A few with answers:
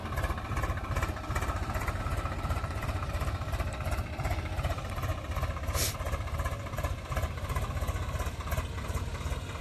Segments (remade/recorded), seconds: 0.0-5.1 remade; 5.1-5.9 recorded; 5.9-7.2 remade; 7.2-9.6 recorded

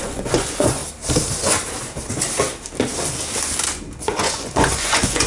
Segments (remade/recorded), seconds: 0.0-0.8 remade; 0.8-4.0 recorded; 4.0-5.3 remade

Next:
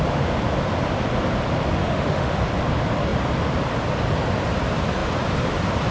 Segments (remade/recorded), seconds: 0.0-1.8 recorded; 1.8-2.5 remade; 2.5-5.9 recorded